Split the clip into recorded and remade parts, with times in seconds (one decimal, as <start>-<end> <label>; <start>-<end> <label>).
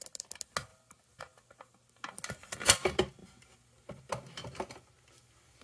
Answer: 0.0-5.6 recorded